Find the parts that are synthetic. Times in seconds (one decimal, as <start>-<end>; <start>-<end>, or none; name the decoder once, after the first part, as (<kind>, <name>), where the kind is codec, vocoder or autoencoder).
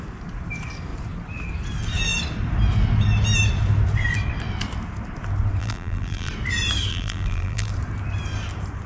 5.6-6.3 (vocoder, BigVGAN v2); 6.9-7.7